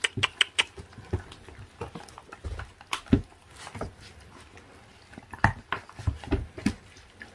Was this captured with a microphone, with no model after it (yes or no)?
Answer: yes